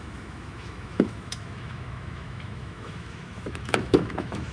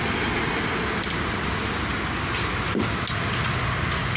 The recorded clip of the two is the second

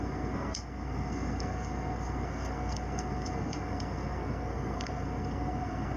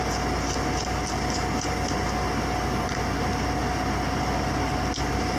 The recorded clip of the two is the second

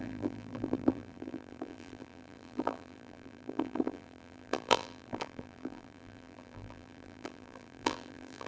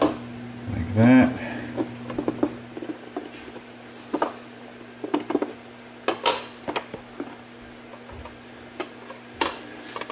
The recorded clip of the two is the second